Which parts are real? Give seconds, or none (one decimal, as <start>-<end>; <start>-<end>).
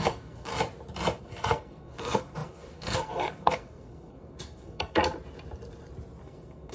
0.5-1.2; 5.0-6.2